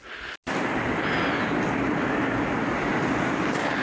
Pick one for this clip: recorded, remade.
recorded